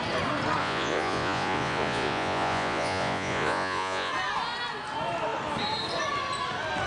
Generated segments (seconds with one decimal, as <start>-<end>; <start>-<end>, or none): 0.6-4.1